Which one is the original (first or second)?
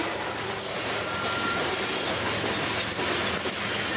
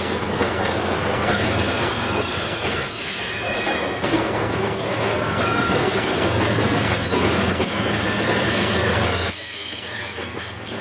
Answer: first